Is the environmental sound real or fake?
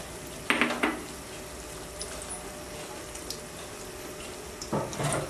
real